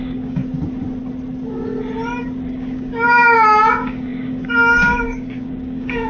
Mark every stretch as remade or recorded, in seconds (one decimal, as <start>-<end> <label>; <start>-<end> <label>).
0.0-0.4 remade; 0.4-2.5 recorded; 2.5-6.1 remade